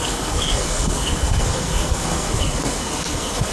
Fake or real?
fake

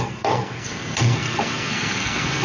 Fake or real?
fake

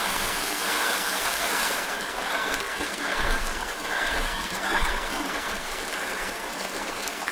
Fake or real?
fake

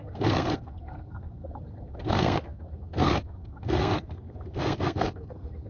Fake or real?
fake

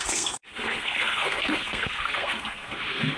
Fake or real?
fake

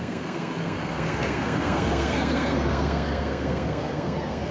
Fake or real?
fake